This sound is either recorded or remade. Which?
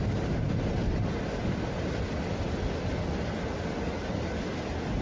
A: recorded